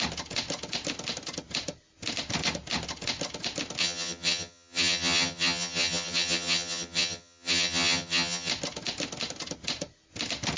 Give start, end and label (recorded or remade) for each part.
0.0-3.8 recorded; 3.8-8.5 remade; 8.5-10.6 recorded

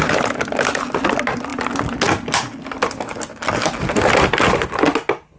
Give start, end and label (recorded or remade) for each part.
0.0-5.4 recorded

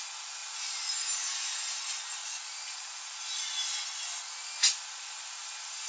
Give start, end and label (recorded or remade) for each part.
0.0-2.2 recorded; 2.2-3.1 remade; 3.1-5.9 recorded

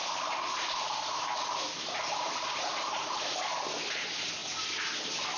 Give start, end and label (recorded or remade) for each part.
0.0-5.4 recorded

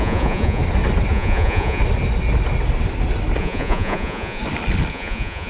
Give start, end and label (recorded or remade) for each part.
0.0-0.6 remade; 0.6-1.1 recorded; 1.1-1.8 remade; 1.8-3.4 recorded; 3.4-4.4 remade; 4.4-4.9 recorded; 4.9-5.5 remade